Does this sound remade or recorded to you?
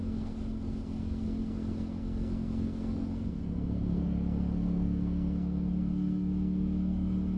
remade